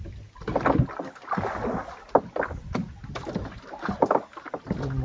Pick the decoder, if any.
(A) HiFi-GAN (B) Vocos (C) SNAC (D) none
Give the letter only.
D